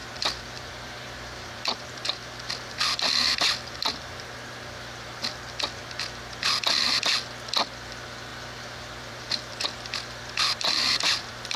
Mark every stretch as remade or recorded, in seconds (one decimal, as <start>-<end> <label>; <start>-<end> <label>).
0.0-4.2 remade; 4.2-8.3 recorded; 8.3-11.6 remade